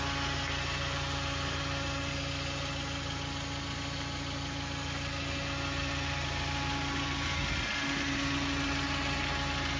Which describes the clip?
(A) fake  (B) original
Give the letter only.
B